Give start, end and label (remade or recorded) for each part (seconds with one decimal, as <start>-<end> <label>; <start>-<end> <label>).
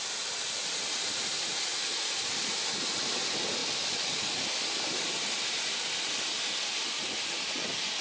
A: 0.0-1.7 recorded; 1.7-2.9 remade; 2.9-3.6 recorded; 3.6-7.4 remade; 7.4-8.0 recorded